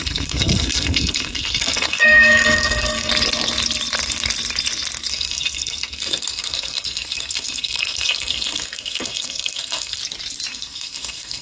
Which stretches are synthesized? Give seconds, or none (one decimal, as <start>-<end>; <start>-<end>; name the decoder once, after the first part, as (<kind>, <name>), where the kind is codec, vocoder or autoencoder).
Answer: 0.0-3.1 (codec, SNAC); 5.1-10.0; 10.5-11.4